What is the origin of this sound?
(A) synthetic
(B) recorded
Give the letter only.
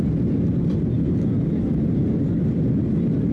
B